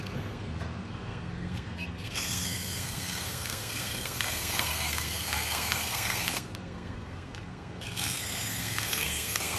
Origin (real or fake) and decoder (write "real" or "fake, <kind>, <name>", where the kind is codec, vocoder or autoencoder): fake, codec, SNAC